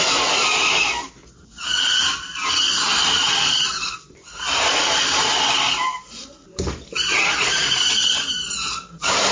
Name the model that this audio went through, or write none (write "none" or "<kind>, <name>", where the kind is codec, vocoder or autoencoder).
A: none